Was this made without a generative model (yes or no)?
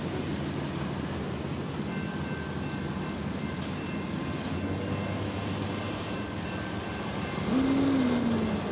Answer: yes